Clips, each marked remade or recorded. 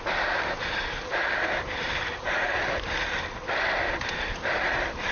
remade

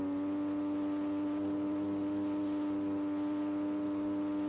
recorded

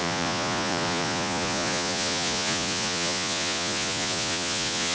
remade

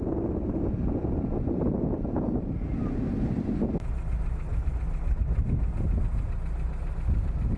recorded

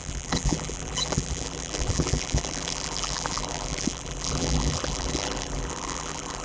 remade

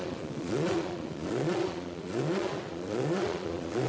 remade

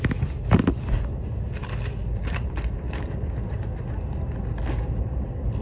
recorded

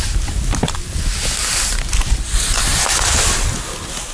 recorded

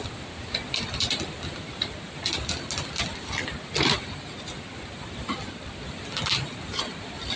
recorded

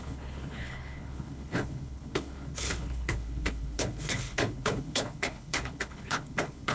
remade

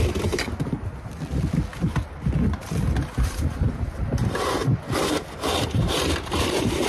recorded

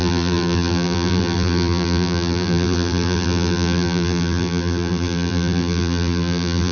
remade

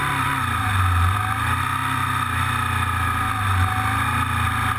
recorded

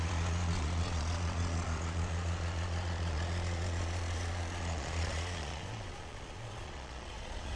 remade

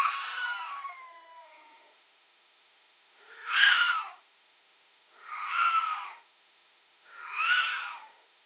remade